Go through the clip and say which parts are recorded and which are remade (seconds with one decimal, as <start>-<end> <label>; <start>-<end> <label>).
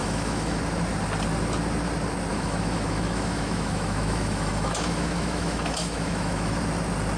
0.0-0.6 remade; 0.6-2.3 recorded; 2.3-6.6 remade; 6.6-7.2 recorded